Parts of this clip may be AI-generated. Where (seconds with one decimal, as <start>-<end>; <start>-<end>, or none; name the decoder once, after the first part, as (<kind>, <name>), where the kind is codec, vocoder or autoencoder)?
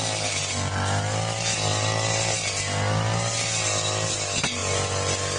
none